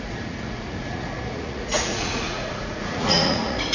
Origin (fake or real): fake